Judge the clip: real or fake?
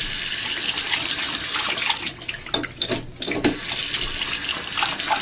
real